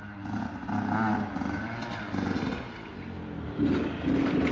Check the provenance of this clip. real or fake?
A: real